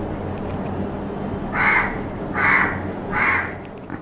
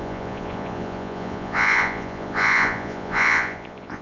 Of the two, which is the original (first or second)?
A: first